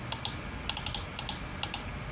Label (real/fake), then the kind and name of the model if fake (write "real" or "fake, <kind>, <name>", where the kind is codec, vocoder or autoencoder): real